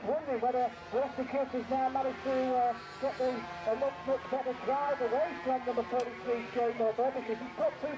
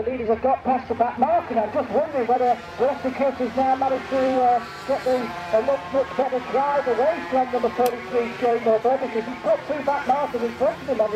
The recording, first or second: first